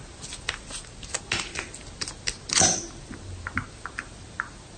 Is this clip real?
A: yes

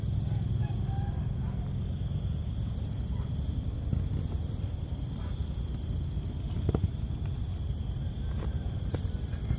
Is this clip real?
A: yes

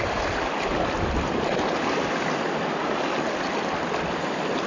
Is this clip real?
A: yes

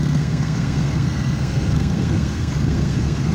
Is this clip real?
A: no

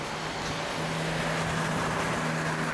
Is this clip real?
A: yes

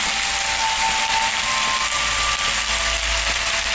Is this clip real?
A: yes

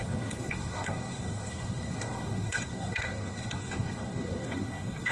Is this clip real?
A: no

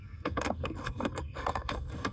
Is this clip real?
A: no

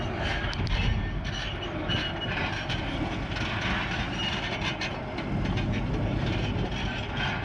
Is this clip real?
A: yes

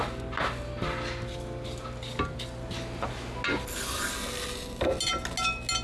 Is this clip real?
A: yes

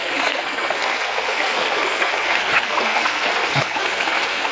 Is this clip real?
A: no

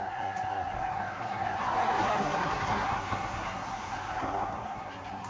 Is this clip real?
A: no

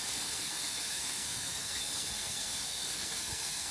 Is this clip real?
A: no